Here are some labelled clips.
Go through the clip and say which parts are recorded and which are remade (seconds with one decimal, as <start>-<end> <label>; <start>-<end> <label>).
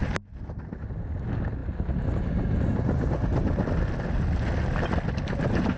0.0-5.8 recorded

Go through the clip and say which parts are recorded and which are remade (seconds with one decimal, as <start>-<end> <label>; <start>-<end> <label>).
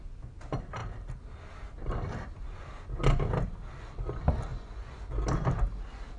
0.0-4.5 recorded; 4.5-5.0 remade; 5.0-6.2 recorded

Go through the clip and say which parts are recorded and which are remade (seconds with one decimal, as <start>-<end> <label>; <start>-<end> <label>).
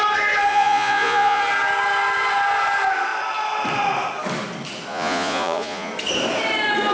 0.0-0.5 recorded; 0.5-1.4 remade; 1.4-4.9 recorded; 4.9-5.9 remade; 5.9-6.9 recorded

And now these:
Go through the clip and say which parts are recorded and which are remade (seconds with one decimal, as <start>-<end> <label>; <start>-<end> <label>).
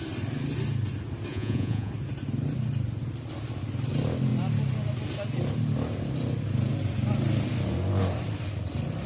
0.0-1.3 recorded; 1.3-1.9 remade; 1.9-9.1 recorded